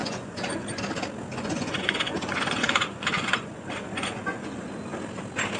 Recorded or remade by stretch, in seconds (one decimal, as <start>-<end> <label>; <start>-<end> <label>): 0.0-0.8 remade; 0.8-1.3 recorded; 1.3-4.7 remade; 4.7-5.6 recorded